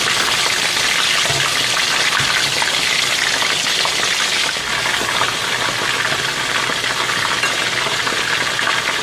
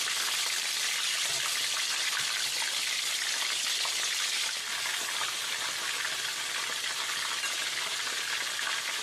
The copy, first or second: second